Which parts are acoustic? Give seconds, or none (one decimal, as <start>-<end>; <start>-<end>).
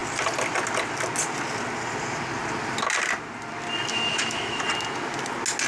0.0-3.9; 4.6-5.7